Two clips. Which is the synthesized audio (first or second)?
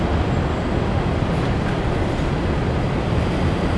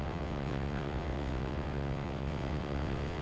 second